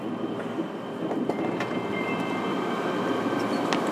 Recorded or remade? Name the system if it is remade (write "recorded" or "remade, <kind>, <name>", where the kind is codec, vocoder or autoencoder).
recorded